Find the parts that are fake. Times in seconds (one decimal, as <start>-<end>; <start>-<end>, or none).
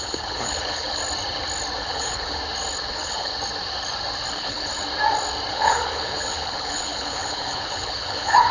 0.0-1.0; 1.8-2.4; 2.9-3.3; 4.3-4.7; 5.5-8.5